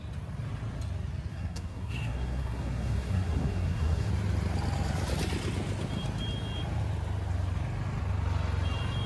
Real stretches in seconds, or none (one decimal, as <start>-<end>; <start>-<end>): 0.0-1.3; 4.1-9.1